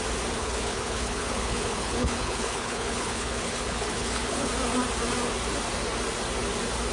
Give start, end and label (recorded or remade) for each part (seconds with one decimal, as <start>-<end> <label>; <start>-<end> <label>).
0.0-0.4 recorded; 0.4-4.5 remade; 4.5-6.9 recorded